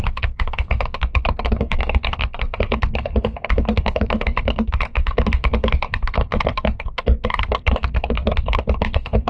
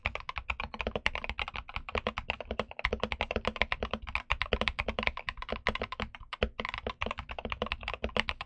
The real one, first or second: second